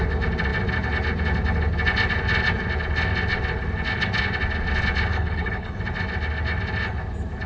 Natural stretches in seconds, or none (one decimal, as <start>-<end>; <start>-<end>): 0.0-5.1; 5.8-7.5